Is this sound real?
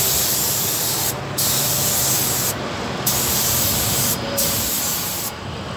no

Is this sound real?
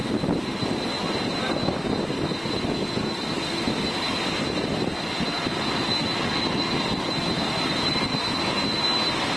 yes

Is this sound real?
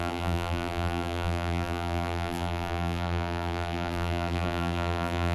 no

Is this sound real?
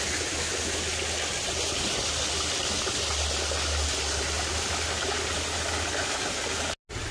yes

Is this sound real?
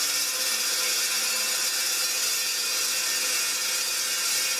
yes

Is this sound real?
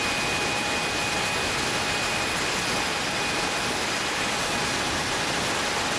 yes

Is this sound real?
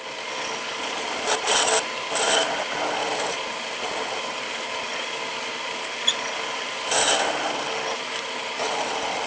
yes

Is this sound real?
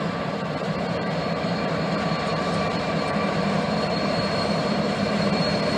no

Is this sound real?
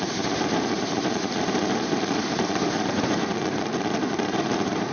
no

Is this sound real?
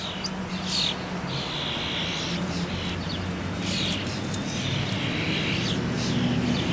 yes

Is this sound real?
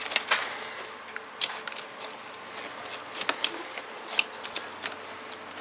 yes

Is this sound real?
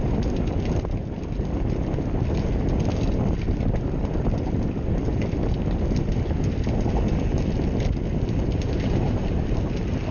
yes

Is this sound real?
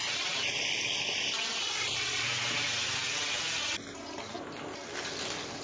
yes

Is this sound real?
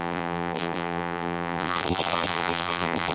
no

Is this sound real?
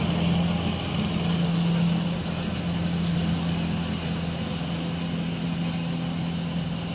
yes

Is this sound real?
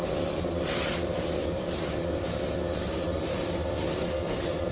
no